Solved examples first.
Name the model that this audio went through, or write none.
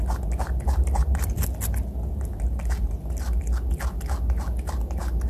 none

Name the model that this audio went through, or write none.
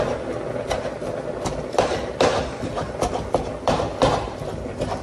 none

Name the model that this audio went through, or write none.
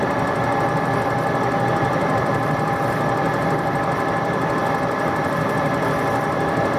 vocoder, BigVGAN v2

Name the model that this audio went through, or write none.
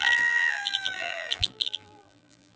vocoder, BigVGAN v2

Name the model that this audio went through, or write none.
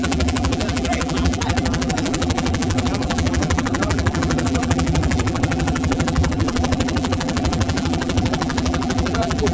vocoder, BigVGAN v2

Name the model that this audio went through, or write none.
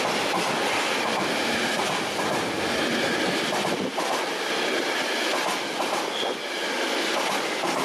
none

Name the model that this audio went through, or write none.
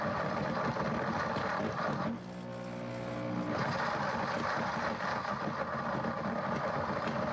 none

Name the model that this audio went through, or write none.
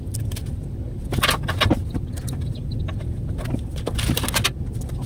none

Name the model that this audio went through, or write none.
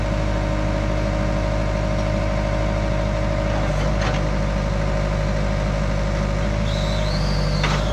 none